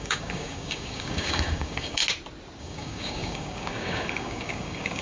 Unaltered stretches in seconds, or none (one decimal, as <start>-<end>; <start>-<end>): 2.0-2.6